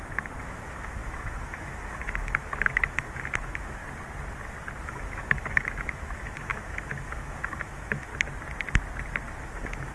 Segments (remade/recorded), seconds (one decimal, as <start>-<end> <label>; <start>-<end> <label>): 0.0-3.8 remade; 3.8-4.8 recorded; 4.8-8.1 remade; 8.1-9.4 recorded; 9.4-9.9 remade